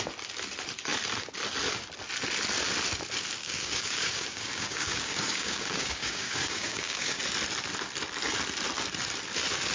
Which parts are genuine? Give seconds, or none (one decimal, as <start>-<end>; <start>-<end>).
0.0-3.4; 7.2-9.7